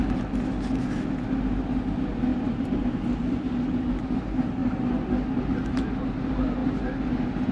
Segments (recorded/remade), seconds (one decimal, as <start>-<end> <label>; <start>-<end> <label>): 0.0-2.3 recorded; 2.3-3.9 remade; 3.9-7.5 recorded